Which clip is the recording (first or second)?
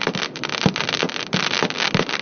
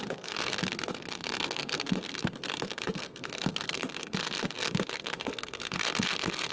first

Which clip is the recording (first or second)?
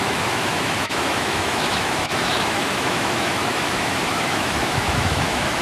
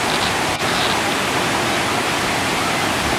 second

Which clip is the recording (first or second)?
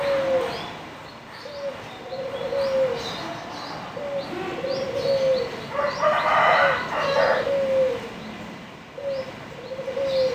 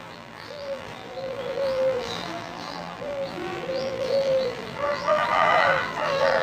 first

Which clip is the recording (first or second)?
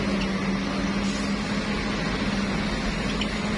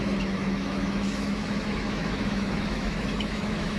first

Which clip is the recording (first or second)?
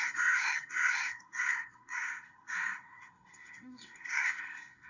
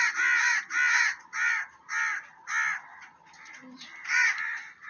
second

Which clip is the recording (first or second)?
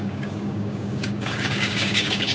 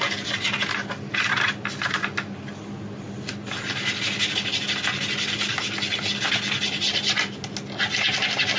second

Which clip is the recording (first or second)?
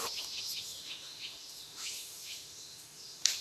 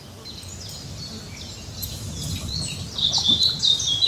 second